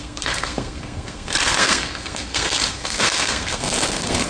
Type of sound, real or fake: fake